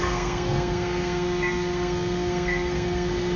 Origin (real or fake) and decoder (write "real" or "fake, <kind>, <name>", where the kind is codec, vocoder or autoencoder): fake, codec, SNAC